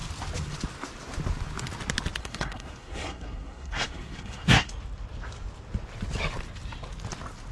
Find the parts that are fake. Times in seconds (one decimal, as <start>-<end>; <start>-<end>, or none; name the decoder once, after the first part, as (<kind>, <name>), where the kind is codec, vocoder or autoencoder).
2.2-4.7 (codec, SNAC)